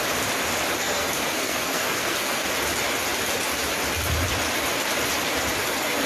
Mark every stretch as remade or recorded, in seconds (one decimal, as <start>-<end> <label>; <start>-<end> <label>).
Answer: 0.0-0.8 recorded; 0.8-2.5 remade; 2.5-5.6 recorded; 5.6-6.1 remade